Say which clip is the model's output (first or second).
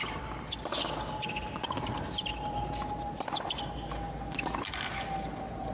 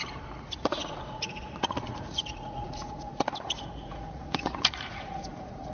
second